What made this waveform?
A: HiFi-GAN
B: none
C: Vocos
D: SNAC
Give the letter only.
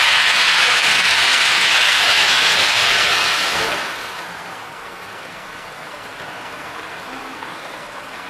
D